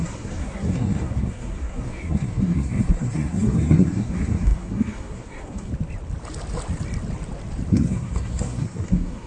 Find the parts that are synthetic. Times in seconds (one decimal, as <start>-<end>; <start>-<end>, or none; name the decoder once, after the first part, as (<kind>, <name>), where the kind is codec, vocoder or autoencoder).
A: 0.0-5.7 (codec, SNAC); 7.7-9.3